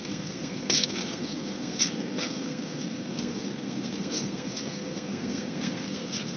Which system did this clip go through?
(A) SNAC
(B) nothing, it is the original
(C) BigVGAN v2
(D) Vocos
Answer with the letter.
A